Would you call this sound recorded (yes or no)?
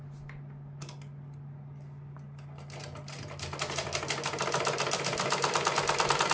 yes